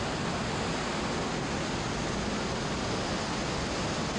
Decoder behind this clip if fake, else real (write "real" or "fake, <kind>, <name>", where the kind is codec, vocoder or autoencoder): real